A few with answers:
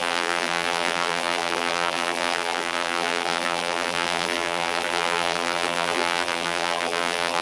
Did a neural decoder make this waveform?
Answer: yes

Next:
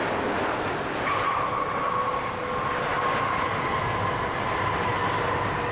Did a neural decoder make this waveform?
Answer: no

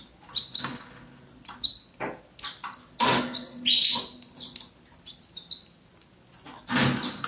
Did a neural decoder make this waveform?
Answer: no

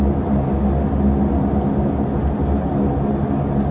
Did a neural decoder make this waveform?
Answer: no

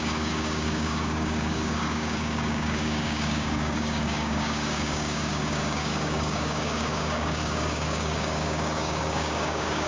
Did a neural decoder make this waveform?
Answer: yes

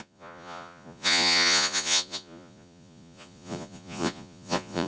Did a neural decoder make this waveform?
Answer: yes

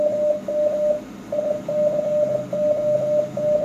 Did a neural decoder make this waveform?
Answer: no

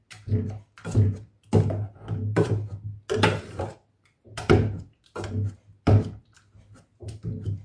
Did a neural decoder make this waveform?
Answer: no